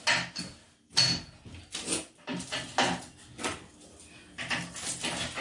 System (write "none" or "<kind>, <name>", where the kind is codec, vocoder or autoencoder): none